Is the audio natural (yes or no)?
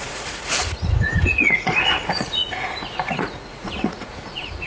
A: no